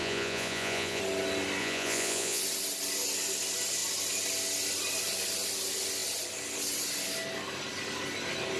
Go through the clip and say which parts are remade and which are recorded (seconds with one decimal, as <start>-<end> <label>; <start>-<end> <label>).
0.0-1.0 remade; 1.0-1.6 recorded; 1.6-2.4 remade; 2.4-8.6 recorded